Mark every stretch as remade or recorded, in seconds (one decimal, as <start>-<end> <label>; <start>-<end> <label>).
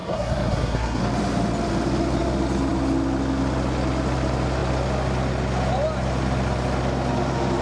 0.0-1.0 remade; 1.0-7.6 recorded